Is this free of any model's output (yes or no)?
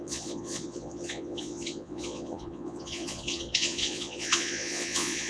no